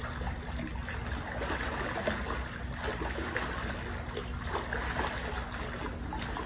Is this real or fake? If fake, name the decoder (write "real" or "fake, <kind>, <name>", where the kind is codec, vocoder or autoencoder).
real